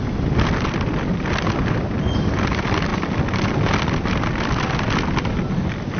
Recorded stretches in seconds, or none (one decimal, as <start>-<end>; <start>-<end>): 0.0-6.0